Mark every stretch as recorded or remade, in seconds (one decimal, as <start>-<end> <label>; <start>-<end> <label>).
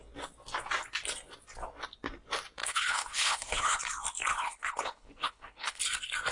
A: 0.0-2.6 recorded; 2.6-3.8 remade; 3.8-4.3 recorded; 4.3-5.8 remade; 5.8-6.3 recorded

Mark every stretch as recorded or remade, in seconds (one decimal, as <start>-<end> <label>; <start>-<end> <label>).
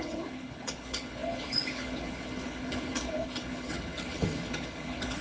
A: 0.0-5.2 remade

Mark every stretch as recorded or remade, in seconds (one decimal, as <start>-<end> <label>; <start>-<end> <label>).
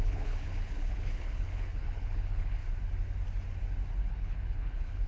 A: 0.0-2.6 remade; 2.6-4.1 recorded; 4.1-5.1 remade